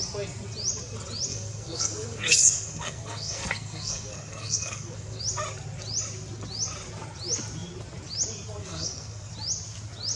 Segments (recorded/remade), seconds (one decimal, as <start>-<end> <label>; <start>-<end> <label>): 0.0-1.3 recorded; 1.3-5.2 remade; 5.2-8.6 recorded; 8.6-9.3 remade; 9.3-10.2 recorded